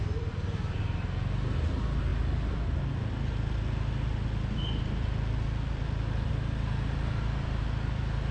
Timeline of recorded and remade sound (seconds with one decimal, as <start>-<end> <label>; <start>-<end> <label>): 0.0-8.3 recorded